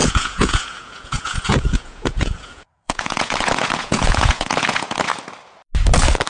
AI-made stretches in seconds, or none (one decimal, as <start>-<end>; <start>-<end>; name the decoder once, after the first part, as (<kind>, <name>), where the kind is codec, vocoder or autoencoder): 0.0-5.1 (vocoder, Vocos)